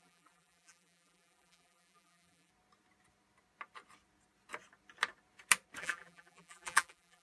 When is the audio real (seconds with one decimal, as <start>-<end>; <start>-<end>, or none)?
2.5-5.8